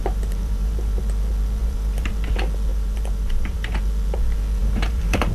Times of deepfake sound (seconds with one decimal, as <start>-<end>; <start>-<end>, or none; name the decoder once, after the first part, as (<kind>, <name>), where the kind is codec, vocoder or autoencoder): 0.0-1.0 (vocoder, BigVGAN v2); 1.6-2.1; 2.7-3.8; 4.6-5.3